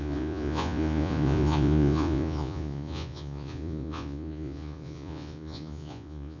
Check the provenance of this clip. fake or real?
fake